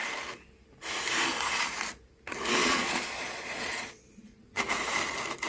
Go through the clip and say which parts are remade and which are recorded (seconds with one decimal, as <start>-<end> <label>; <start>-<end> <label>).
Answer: 0.0-2.6 recorded; 2.6-4.6 remade; 4.6-5.5 recorded